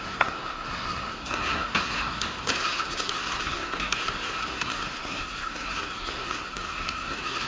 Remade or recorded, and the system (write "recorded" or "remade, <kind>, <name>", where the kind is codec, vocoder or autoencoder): remade, codec, SNAC